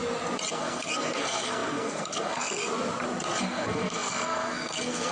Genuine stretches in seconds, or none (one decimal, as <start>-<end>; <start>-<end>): 0.0-0.5; 2.6-3.4